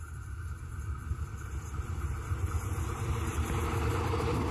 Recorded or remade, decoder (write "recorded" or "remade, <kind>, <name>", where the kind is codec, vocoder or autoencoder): recorded